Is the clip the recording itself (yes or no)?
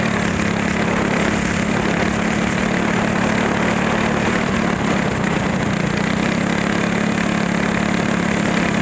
yes